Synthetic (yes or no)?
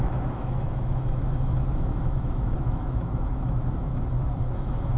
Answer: yes